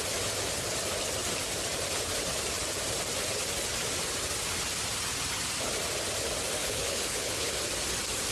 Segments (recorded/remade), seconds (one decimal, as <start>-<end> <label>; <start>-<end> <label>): 0.0-6.6 recorded; 6.6-7.5 remade; 7.5-8.3 recorded